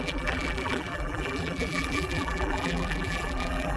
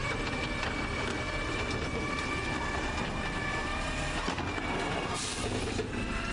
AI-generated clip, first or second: first